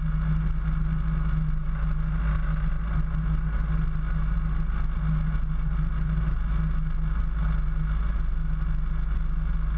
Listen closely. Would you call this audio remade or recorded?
recorded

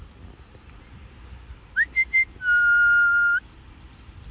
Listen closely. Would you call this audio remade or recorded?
recorded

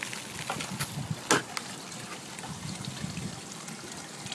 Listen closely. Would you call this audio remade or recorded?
recorded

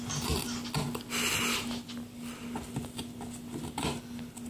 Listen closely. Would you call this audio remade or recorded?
recorded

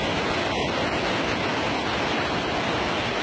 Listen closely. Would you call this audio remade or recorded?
recorded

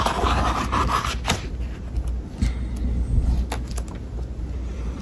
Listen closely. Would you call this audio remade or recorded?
recorded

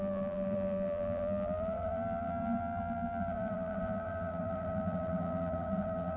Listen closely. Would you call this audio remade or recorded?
remade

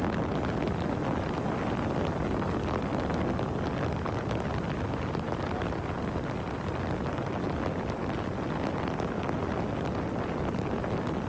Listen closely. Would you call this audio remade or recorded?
recorded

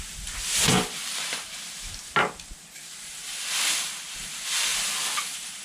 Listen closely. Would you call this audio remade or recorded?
recorded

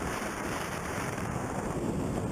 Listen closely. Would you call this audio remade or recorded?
remade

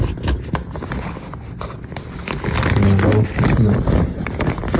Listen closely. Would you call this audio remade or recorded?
recorded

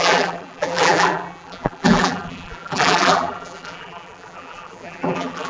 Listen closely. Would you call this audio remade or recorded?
remade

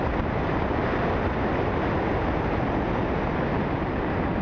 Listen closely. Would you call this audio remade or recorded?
recorded